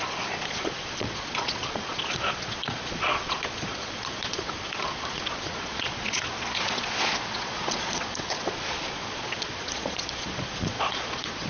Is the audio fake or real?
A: fake